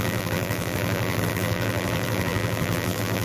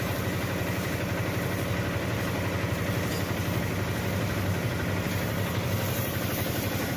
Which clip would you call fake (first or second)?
first